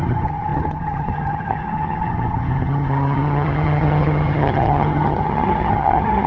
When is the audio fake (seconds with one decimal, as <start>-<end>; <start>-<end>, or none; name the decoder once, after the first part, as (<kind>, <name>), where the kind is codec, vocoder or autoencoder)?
0.0-6.3 (vocoder, HiFi-GAN)